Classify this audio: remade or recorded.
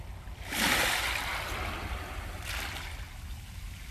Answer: recorded